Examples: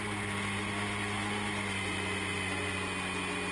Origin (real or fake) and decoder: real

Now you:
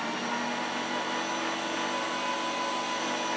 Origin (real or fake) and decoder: real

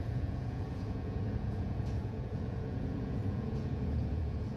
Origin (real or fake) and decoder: fake, vocoder, Vocos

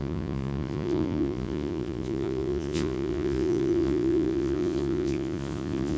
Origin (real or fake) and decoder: fake, vocoder, Vocos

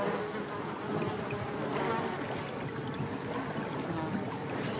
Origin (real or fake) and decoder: real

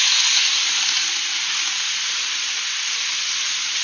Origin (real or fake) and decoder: real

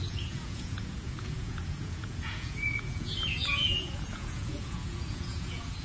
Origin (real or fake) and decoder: fake, vocoder, Vocos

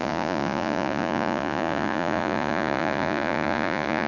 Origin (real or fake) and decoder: fake, vocoder, Vocos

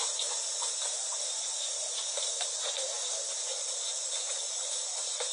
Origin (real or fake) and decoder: real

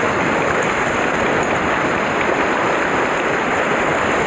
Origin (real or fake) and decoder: real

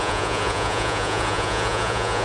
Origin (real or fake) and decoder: fake, vocoder, Vocos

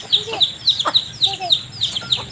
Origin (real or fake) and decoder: real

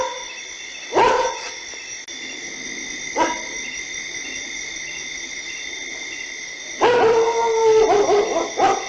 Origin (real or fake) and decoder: real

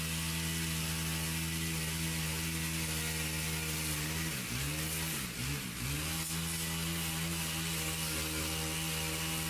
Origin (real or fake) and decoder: real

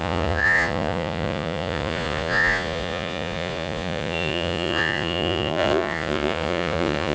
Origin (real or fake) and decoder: fake, vocoder, Vocos